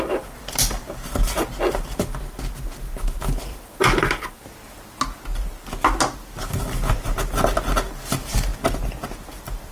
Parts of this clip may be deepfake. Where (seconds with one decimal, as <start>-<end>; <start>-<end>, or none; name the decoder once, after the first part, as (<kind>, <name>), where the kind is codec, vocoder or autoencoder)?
3.2-4.3 (vocoder, BigVGAN v2)

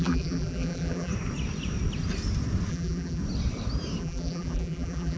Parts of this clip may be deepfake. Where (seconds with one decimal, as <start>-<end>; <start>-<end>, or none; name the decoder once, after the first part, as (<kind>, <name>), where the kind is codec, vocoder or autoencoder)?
0.0-1.1 (vocoder, BigVGAN v2); 2.7-3.2; 4.0-5.2

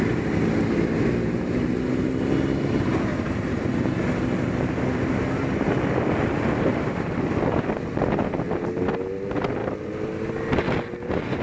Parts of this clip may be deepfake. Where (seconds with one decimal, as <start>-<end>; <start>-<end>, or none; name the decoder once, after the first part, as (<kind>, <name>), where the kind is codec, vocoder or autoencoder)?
3.1-3.7 (vocoder, BigVGAN v2); 6.7-7.3

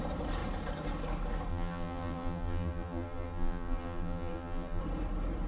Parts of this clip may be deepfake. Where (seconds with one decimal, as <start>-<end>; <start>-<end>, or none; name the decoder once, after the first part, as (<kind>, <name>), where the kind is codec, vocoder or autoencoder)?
1.5-4.8 (vocoder, BigVGAN v2)

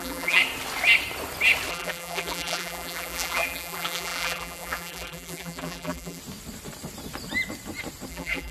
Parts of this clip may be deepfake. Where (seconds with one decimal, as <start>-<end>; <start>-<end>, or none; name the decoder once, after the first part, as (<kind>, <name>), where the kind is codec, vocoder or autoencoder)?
0.0-0.4 (vocoder, BigVGAN v2); 1.7-6.2; 8.1-8.5